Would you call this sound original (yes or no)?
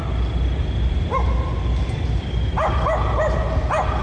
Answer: yes